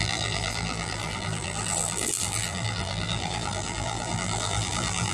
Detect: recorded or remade remade